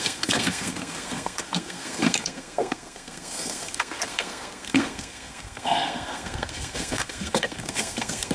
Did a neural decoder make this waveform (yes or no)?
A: yes